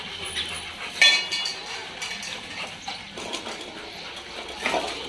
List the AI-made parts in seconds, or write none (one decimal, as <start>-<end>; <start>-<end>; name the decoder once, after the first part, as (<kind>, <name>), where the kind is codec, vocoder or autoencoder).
none